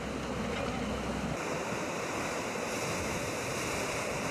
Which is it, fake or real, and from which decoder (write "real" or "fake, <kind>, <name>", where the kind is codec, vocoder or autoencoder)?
real